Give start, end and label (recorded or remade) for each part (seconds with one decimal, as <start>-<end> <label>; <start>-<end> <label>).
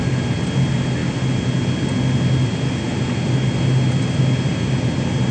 0.0-5.3 recorded